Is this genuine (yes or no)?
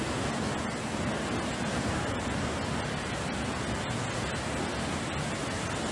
yes